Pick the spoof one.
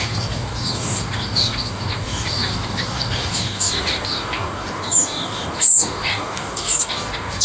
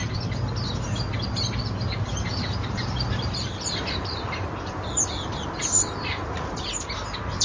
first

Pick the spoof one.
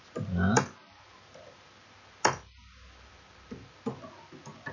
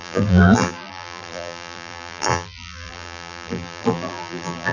second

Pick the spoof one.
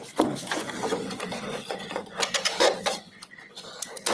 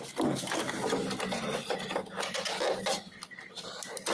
first